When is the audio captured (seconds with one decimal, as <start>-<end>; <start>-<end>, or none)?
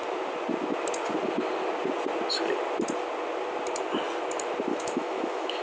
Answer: 0.0-4.7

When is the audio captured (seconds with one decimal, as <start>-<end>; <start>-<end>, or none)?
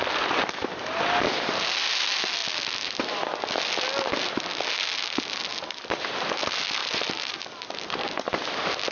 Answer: 0.0-5.5; 6.1-6.8; 8.3-8.9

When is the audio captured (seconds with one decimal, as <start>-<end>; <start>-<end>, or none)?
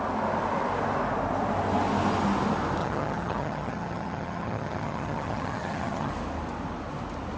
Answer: 0.0-2.8; 6.1-7.4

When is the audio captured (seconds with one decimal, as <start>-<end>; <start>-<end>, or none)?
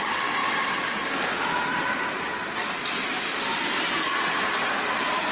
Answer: 0.0-0.4; 1.3-5.3